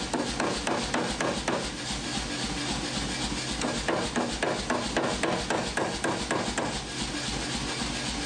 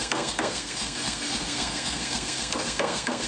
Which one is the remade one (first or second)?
second